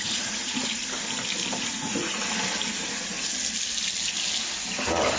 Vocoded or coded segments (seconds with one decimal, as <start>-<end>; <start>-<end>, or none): 0.0-0.8; 1.6-2.2